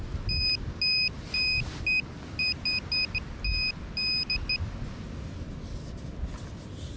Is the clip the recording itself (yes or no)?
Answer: yes